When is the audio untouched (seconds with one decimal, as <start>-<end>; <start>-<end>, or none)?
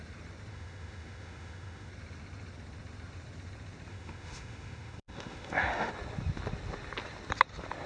0.0-0.5; 1.9-3.9; 5.9-7.9